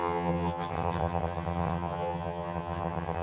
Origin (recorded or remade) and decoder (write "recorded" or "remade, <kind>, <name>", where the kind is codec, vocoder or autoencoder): remade, vocoder, HiFi-GAN